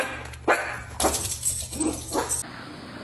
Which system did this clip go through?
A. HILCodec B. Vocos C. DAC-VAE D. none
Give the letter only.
D